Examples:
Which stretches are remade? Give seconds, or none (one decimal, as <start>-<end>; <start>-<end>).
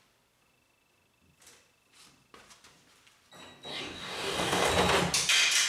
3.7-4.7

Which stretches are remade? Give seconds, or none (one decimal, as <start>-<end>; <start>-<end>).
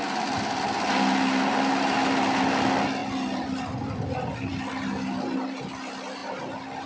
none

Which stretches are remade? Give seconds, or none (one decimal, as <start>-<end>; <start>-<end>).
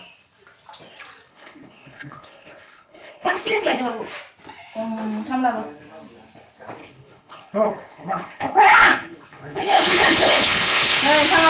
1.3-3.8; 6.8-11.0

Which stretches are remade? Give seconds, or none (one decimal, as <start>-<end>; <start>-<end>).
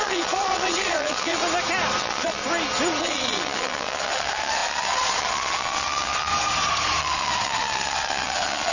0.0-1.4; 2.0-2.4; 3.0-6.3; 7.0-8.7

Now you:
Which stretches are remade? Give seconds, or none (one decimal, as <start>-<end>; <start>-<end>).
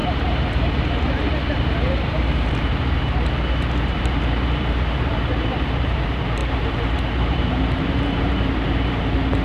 0.0-9.4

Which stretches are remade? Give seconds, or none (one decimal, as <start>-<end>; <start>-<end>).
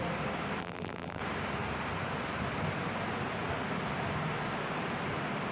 0.6-1.2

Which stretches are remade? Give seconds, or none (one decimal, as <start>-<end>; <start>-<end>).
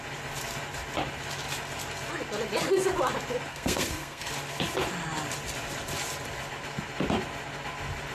3.5-4.3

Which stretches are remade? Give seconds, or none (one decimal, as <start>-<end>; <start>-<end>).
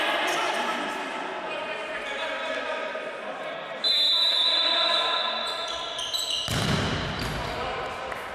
none